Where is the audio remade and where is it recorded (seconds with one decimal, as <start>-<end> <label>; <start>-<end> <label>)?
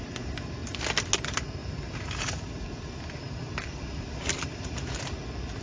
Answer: 0.0-1.6 recorded; 1.6-5.0 remade; 5.0-5.6 recorded